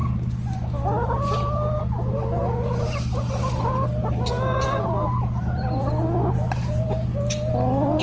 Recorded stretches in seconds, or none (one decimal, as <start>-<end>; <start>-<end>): 0.0-2.4; 5.8-6.2; 6.8-8.0